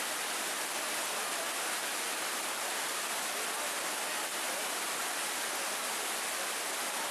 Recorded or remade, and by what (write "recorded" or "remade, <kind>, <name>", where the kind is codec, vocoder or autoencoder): recorded